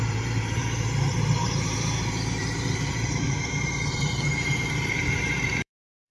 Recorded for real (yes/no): no